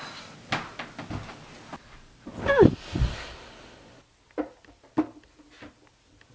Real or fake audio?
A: real